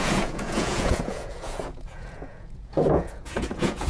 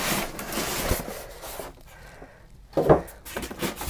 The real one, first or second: second